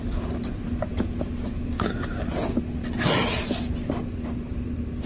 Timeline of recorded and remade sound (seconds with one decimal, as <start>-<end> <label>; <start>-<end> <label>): 0.0-5.1 recorded